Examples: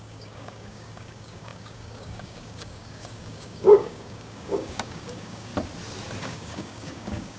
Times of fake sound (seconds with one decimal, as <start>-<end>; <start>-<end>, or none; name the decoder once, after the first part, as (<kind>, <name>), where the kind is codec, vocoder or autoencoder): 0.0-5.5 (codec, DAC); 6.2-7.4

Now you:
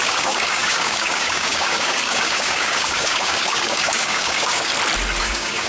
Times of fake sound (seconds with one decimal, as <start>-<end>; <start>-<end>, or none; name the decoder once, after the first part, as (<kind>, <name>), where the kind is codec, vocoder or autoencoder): 0.0-4.7 (codec, DAC); 5.2-5.7

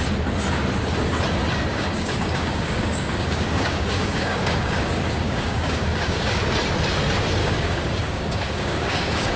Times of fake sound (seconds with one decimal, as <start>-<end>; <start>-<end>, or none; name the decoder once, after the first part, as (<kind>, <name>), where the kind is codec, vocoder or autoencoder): 1.7-6.4 (codec, DAC); 7.4-9.4

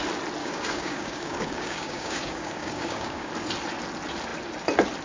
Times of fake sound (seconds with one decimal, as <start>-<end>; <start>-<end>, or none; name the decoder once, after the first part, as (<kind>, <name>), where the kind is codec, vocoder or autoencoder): 0.4-3.3 (codec, DAC)

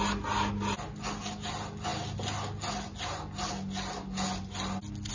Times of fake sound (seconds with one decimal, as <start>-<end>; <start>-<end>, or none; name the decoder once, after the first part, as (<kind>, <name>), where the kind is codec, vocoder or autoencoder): none

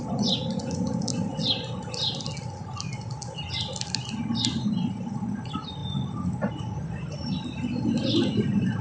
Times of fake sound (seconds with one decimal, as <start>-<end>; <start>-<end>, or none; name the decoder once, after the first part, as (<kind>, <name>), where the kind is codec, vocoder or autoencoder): none